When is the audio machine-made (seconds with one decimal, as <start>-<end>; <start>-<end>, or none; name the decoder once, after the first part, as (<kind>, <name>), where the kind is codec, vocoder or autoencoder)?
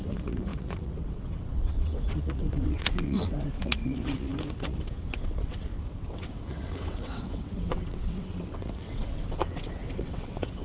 0.0-10.6 (vocoder, WaveNeXt)